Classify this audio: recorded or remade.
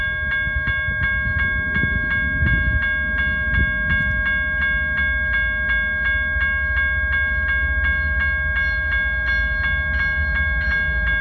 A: recorded